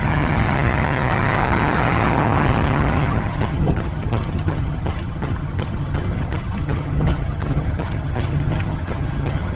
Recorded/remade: remade